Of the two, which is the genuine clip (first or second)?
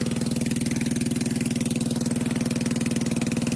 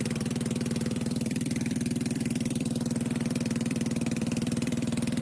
first